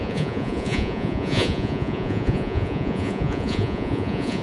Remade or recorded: remade